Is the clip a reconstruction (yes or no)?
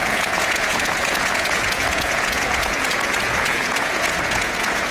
yes